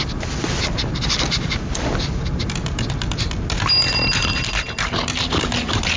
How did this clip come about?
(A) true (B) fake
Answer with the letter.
A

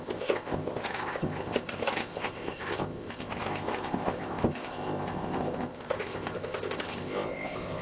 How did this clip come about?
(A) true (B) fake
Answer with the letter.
B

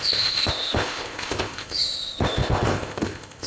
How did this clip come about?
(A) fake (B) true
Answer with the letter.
A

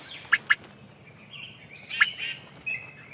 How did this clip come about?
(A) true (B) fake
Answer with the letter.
A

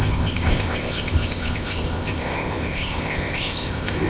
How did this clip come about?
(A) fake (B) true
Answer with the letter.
A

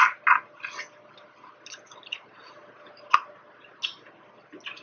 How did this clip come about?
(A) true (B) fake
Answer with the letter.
A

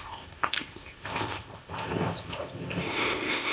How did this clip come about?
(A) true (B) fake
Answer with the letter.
B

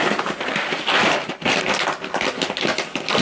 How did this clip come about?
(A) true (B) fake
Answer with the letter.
A